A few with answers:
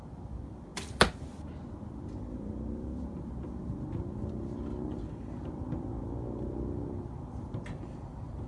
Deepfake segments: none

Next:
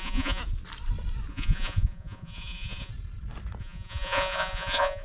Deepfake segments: 0.0-0.4; 1.3-2.9; 3.6-5.0